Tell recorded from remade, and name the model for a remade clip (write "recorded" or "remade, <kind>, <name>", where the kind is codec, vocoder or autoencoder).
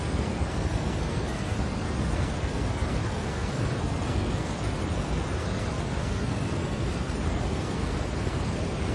remade, codec, SNAC